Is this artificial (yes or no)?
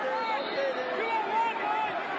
no